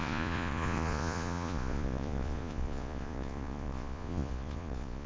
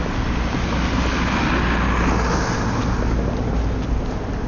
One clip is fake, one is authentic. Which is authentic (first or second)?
second